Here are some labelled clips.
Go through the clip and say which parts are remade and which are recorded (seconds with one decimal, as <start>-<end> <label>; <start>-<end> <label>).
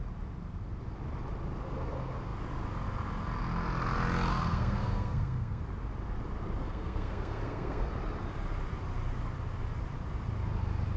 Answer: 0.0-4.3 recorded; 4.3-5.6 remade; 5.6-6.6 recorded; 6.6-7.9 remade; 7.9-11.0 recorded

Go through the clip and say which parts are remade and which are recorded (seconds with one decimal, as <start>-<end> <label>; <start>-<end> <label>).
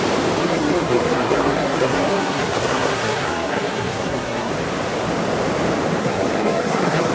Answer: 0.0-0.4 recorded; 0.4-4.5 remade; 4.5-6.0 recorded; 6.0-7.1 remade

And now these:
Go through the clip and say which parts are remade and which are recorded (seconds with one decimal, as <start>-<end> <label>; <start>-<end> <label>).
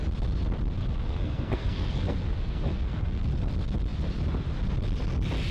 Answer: 0.0-0.8 recorded; 0.8-3.3 remade; 3.3-5.5 recorded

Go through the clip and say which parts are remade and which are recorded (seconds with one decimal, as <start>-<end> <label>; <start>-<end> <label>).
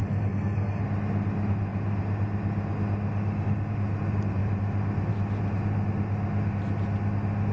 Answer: 0.0-0.8 remade; 0.8-7.5 recorded